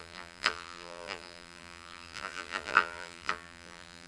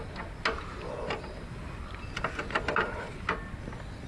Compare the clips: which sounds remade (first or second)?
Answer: first